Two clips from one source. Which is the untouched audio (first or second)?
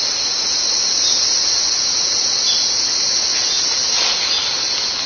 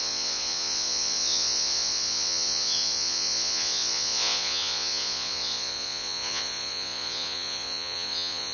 first